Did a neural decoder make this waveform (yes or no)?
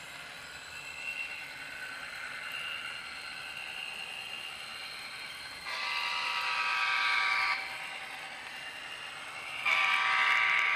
no